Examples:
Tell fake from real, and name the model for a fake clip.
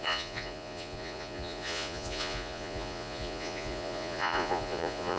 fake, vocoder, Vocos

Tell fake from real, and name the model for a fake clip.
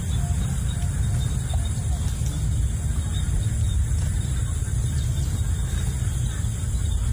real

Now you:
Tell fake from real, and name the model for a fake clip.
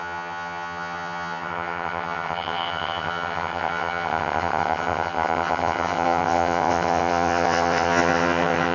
fake, vocoder, HiFi-GAN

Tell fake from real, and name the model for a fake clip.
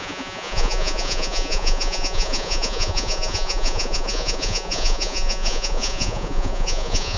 fake, vocoder, Vocos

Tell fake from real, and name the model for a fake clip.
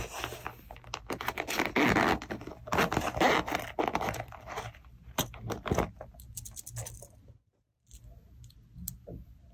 real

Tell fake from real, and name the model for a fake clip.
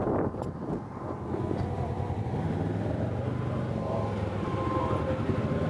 real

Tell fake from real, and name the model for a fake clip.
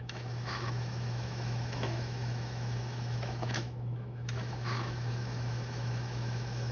fake, autoencoder, DAC-VAE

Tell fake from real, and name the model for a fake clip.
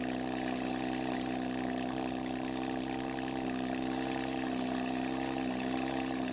real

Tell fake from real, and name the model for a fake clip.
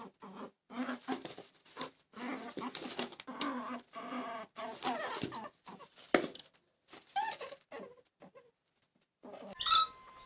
real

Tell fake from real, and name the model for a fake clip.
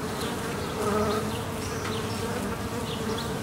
real